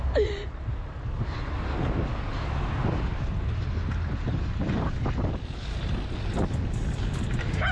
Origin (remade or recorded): recorded